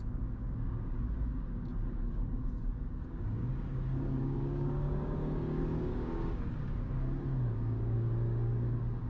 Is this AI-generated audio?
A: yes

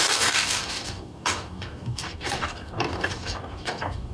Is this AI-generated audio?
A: yes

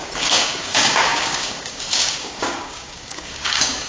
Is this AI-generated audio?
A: yes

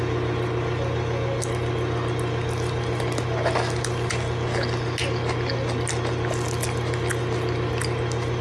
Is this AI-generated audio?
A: no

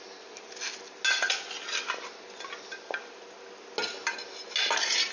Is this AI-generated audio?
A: no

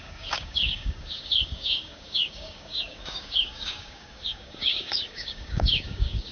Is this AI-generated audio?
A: yes